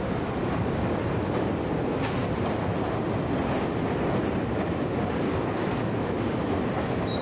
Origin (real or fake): real